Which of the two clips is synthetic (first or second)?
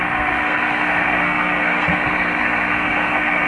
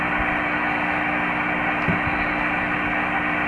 first